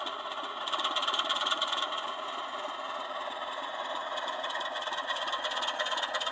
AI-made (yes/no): yes